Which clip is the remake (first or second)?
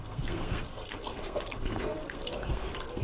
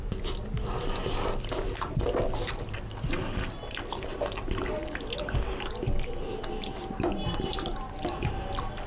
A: first